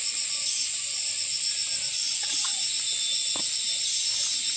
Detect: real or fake real